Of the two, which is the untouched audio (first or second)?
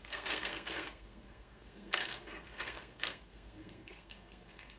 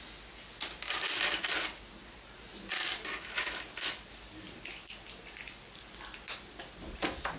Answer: second